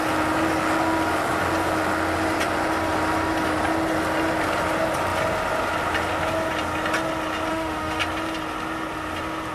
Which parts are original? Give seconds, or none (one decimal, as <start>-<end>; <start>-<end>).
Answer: 0.0-7.5; 8.0-9.5